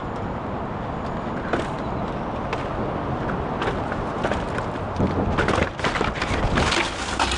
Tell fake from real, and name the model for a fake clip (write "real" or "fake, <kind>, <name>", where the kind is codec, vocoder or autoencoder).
real